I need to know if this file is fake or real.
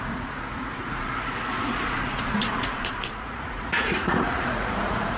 fake